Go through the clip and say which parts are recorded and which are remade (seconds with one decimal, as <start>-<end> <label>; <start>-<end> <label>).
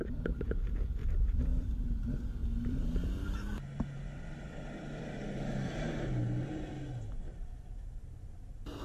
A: 0.0-1.0 recorded; 1.0-1.7 remade; 1.7-2.4 recorded; 2.4-5.2 remade; 5.2-8.8 recorded